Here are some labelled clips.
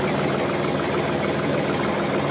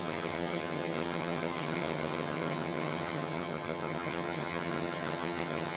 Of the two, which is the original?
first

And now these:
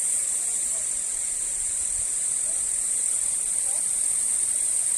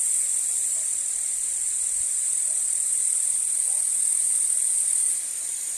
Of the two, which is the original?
second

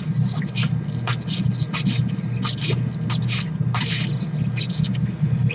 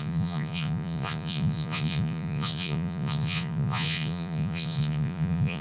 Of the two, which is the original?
first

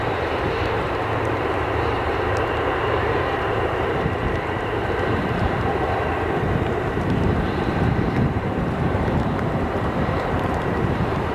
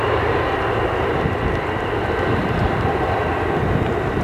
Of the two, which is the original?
second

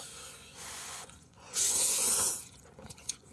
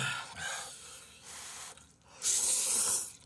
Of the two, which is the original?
second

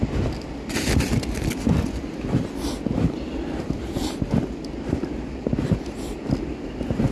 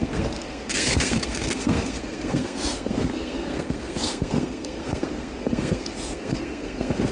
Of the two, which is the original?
first